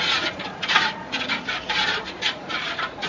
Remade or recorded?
remade